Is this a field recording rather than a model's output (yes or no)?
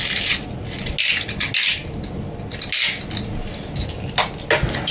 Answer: yes